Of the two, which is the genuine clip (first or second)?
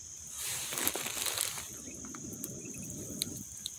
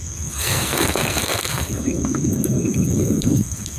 first